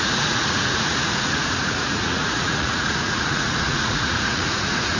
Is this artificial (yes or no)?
yes